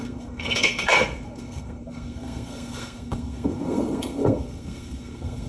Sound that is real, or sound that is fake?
fake